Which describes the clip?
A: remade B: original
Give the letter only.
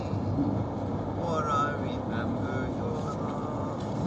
B